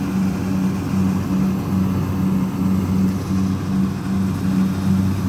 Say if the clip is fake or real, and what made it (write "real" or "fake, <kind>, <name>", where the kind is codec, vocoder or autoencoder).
real